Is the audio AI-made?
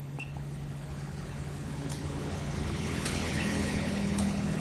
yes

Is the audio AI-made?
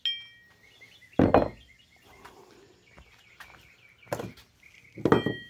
no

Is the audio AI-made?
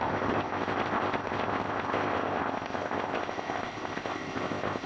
yes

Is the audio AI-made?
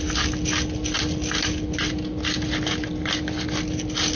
no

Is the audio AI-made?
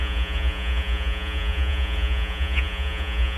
yes